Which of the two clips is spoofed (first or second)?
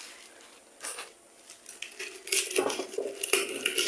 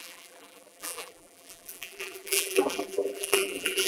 second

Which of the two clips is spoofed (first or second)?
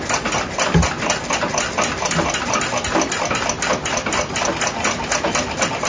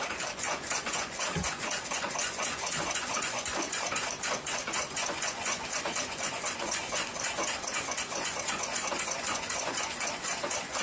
second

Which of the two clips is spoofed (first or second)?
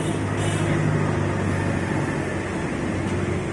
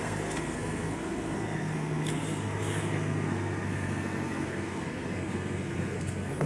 second